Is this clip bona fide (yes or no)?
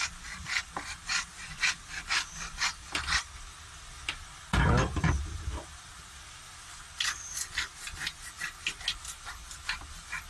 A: yes